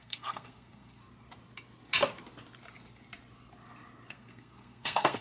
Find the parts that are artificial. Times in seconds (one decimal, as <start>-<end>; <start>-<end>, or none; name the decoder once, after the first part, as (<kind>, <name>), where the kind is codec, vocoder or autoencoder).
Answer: 0.0-1.0 (codec, SNAC); 4.1-5.2